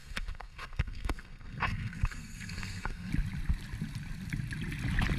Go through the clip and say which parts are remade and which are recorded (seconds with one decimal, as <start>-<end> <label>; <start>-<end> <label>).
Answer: 0.0-3.1 remade; 3.1-5.2 recorded